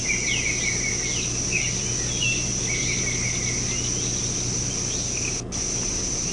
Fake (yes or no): no